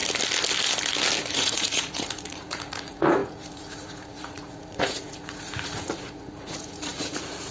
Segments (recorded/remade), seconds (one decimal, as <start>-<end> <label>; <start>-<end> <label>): 0.0-1.3 recorded; 1.3-7.5 remade